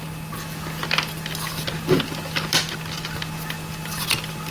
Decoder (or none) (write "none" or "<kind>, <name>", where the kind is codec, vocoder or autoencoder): none